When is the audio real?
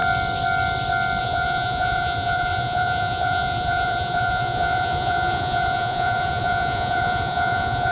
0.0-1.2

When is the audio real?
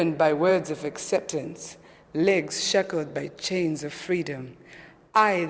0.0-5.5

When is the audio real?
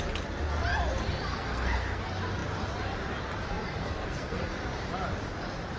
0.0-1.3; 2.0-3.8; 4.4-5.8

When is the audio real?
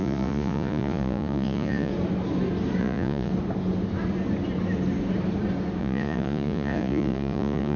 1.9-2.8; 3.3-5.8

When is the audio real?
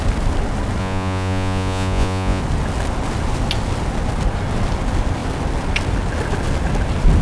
0.0-0.8; 2.4-7.2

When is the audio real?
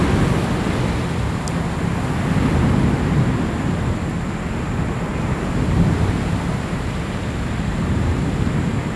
0.0-5.1